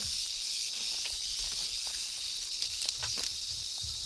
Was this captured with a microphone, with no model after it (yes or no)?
yes